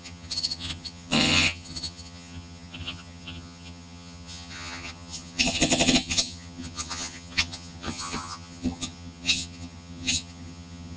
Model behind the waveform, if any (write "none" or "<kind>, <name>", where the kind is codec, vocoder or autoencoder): vocoder, HiFi-GAN